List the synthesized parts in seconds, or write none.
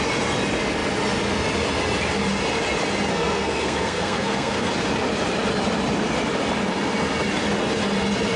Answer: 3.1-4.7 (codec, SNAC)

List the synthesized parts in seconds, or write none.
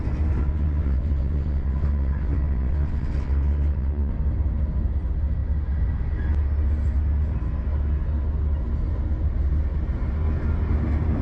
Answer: 0.4-4.1 (vocoder, WaveNeXt)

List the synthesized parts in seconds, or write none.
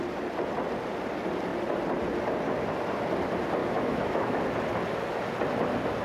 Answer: 3.6-4.4 (autoencoder, DAC-VAE)